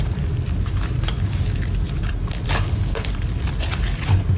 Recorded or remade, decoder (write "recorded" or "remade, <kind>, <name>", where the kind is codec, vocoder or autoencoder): recorded